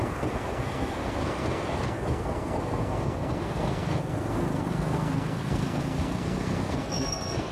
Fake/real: fake